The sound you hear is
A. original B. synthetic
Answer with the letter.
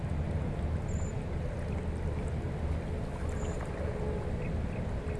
A